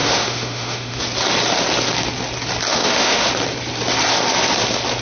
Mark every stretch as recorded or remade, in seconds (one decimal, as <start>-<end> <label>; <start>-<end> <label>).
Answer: 0.0-1.0 remade; 1.0-2.7 recorded; 2.7-3.3 remade; 3.3-5.0 recorded